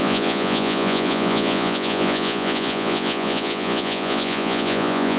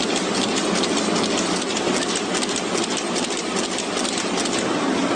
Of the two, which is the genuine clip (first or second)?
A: second